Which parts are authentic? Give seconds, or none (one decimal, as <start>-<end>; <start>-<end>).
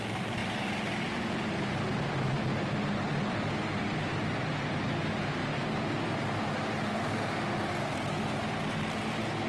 0.0-9.5